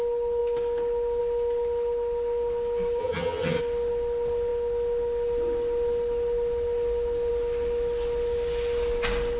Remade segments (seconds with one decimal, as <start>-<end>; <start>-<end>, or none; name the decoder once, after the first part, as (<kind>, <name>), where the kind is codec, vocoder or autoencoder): 3.0-3.6 (vocoder, HiFi-GAN)